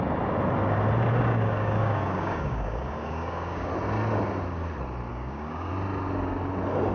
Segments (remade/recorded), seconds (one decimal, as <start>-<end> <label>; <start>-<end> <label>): 0.0-1.1 recorded; 1.1-3.7 remade; 3.7-5.1 recorded; 5.1-5.7 remade; 5.7-6.9 recorded